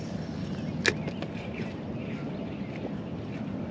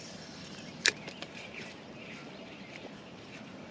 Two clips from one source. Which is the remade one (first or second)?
second